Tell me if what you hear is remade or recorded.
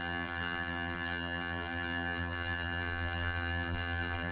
remade